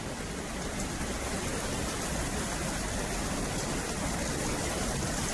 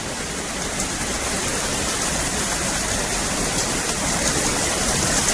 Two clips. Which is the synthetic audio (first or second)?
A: second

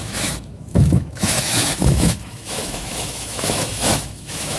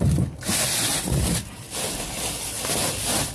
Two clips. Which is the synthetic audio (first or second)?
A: first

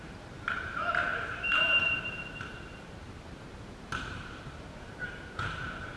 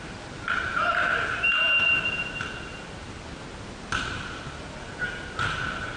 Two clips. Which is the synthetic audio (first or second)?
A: first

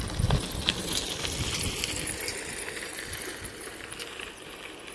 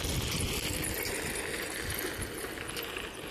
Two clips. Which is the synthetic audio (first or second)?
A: first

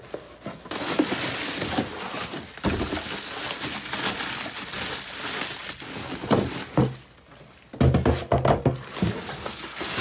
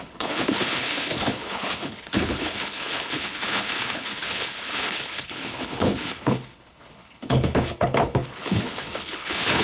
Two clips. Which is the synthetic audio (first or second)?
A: second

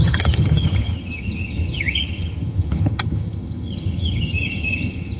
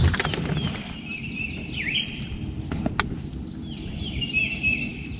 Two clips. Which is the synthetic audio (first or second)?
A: first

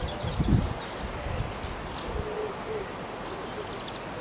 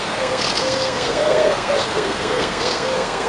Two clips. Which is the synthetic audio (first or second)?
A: second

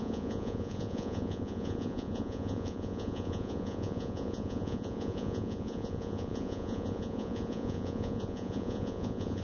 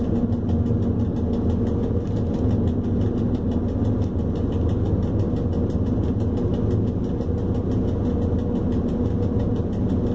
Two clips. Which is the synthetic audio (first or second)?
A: first